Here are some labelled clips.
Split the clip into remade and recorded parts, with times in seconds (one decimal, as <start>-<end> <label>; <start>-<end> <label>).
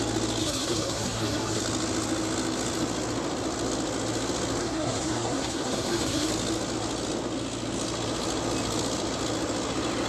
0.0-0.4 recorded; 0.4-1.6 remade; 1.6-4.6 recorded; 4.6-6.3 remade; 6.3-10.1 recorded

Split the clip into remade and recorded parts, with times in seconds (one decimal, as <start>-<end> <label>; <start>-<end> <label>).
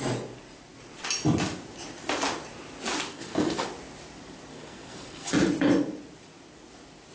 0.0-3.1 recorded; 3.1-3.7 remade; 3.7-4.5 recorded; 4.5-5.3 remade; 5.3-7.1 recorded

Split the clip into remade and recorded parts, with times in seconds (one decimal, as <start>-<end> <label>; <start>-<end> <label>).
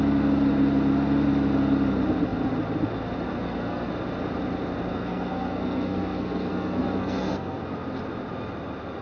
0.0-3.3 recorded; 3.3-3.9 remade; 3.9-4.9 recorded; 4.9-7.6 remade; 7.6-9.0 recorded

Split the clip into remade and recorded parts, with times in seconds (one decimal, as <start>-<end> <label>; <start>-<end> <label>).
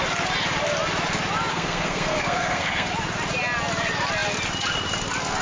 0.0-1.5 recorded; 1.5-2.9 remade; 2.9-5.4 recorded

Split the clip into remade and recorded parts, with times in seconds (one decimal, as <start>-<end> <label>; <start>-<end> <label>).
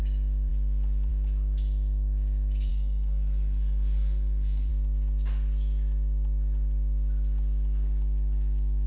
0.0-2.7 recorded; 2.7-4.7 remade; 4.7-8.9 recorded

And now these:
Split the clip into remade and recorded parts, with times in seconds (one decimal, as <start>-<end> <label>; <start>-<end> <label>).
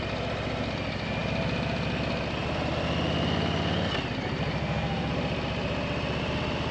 0.0-4.6 recorded; 4.6-5.1 remade; 5.1-6.7 recorded